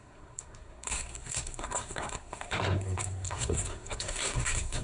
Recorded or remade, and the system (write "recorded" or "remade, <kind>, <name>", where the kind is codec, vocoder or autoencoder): remade, codec, SNAC